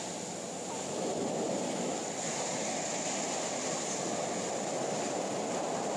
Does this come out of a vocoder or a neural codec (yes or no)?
no